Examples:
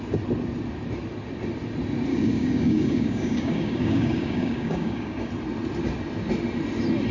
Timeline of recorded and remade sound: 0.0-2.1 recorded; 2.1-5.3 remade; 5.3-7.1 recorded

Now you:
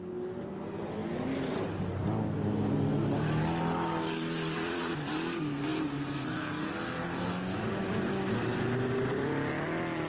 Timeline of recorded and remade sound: 0.0-10.1 recorded

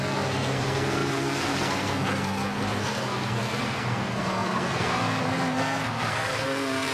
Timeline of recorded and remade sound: 0.0-6.9 remade

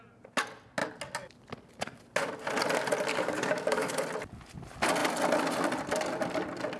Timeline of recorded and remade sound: 0.0-3.1 recorded; 3.1-3.9 remade; 3.9-6.8 recorded